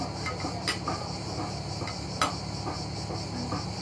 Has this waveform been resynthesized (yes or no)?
no